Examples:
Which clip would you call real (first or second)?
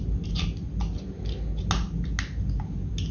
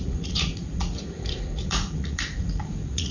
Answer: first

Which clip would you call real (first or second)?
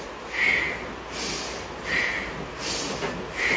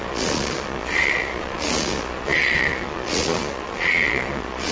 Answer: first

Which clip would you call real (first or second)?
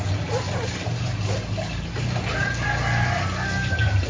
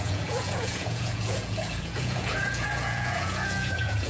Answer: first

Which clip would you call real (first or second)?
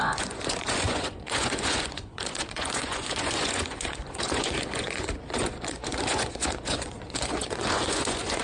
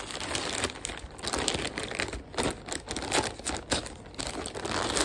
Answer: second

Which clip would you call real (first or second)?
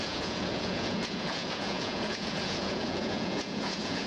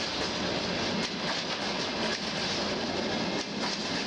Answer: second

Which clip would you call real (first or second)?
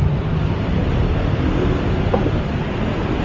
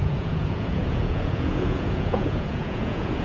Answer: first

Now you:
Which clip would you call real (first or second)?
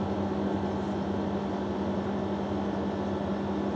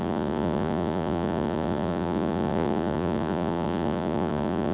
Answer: first